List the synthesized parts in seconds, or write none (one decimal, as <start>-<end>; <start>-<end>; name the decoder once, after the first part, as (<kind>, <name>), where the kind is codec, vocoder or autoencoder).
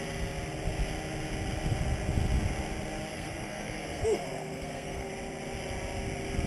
3.1-5.1 (codec, SNAC)